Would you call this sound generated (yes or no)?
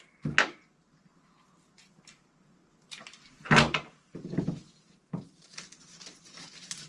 no